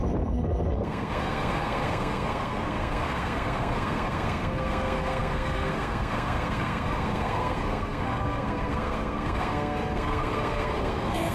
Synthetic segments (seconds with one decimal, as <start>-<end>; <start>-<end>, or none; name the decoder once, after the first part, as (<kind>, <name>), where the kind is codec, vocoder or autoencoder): 0.0-11.3 (codec, SNAC)